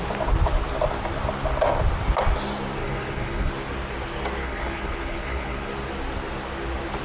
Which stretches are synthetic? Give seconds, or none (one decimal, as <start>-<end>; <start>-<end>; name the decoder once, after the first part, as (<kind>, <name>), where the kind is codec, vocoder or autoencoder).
2.8-3.5 (codec, HILCodec); 4.4-5.7